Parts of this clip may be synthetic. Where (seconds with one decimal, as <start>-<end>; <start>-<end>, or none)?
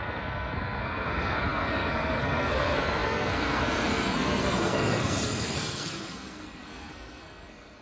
0.0-7.8